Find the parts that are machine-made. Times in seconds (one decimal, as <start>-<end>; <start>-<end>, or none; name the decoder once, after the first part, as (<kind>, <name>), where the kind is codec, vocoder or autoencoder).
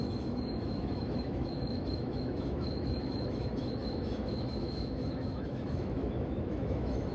0.0-7.1 (autoencoder, DAC-VAE)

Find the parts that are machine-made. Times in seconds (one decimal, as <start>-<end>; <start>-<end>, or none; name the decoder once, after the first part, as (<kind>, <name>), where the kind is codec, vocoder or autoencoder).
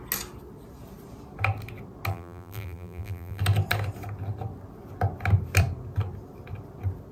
2.1-3.4 (vocoder, BigVGAN v2)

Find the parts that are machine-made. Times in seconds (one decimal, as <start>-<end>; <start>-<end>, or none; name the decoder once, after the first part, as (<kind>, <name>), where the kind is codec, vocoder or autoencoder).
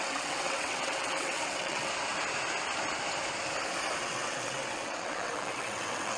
0.0-1.9 (vocoder, WaveNeXt); 4.0-6.2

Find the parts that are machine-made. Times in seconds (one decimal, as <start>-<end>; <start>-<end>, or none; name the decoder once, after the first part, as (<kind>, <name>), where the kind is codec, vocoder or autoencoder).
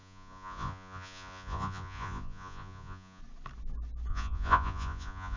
0.0-3.2 (vocoder, Vocos); 4.1-5.4